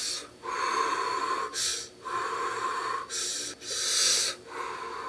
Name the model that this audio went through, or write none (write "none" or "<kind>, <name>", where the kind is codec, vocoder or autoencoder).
none